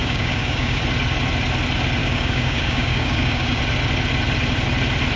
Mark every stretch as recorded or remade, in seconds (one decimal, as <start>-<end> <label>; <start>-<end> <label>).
0.0-0.8 remade; 0.8-2.0 recorded; 2.0-3.6 remade; 3.6-5.2 recorded

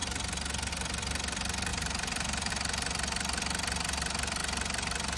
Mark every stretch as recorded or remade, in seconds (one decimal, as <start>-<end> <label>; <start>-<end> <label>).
0.0-1.7 recorded; 1.7-2.5 remade; 2.5-5.2 recorded

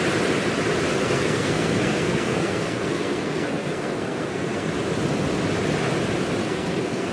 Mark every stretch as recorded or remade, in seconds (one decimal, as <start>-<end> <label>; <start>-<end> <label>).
0.0-0.9 recorded; 0.9-4.7 remade; 4.7-6.4 recorded; 6.4-7.1 remade

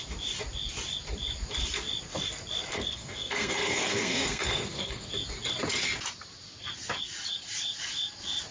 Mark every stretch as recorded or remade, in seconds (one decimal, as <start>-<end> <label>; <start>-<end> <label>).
0.0-2.7 recorded; 2.7-5.1 remade; 5.1-8.5 recorded